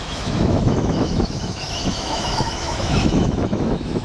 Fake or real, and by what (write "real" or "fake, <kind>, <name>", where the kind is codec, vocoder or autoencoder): fake, autoencoder, DAC-VAE